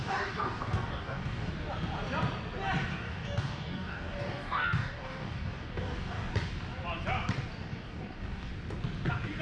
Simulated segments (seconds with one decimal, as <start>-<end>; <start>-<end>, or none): 0.0-1.5; 2.9-6.3; 7.6-8.5